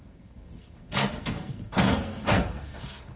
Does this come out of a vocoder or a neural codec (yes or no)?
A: yes